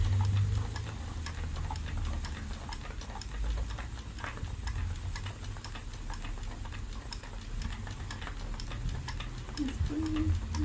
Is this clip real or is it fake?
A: real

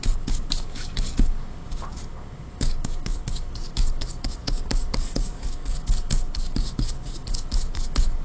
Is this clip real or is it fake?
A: fake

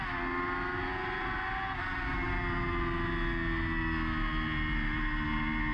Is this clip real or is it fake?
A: real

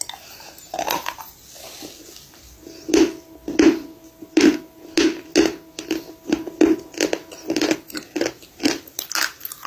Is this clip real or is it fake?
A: real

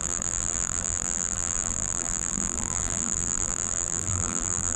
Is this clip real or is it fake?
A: fake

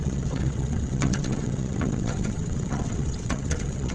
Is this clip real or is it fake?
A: fake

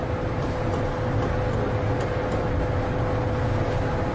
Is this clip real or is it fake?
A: real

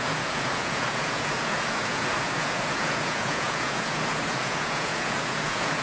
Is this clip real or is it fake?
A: fake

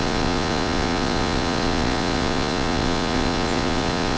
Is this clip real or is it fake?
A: fake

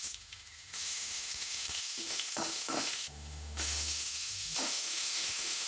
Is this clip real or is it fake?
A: fake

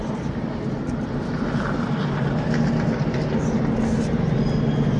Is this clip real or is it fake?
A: real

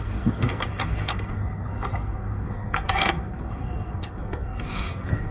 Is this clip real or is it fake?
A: fake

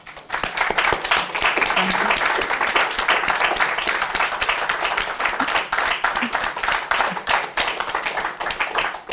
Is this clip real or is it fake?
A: fake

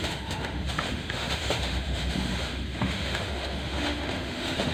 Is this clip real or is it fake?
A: fake